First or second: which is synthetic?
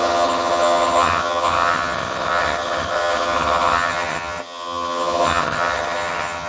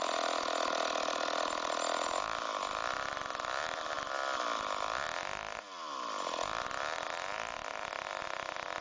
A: first